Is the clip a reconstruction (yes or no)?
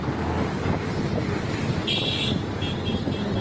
no